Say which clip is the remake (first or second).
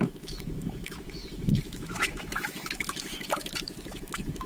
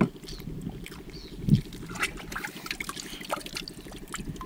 first